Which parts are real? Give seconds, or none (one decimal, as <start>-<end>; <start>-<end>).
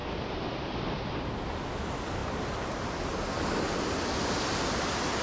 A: 0.0-5.2